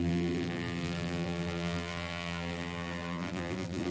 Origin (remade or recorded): remade